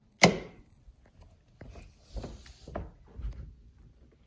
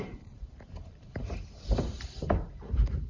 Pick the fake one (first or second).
second